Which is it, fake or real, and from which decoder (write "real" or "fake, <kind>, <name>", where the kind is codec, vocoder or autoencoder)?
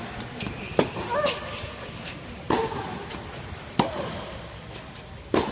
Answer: real